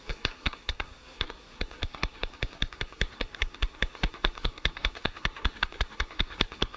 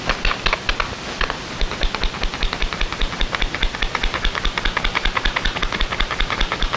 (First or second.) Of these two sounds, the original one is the second